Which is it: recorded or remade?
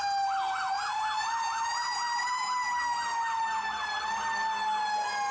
recorded